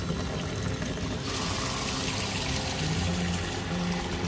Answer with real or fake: real